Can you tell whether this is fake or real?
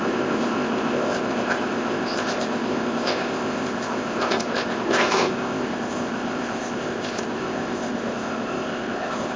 fake